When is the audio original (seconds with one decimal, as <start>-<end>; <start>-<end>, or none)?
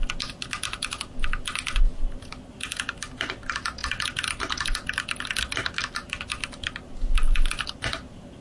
0.0-8.4